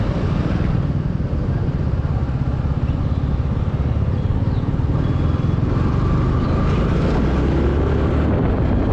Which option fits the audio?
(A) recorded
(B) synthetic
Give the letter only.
A